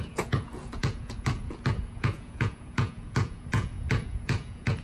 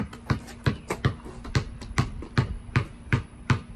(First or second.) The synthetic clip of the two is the first